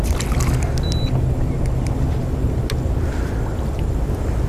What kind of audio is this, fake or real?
real